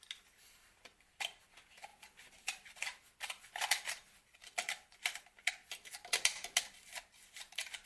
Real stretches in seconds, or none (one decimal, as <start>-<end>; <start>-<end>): 0.0-1.9; 5.2-7.9